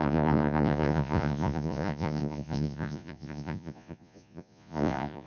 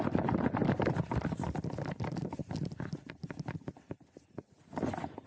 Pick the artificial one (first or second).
first